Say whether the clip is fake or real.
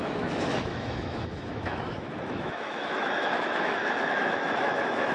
fake